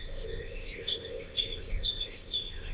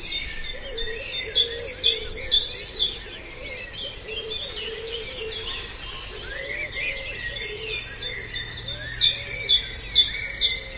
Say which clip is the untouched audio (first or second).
second